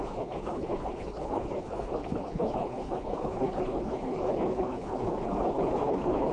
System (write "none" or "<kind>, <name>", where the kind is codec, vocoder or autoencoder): codec, HILCodec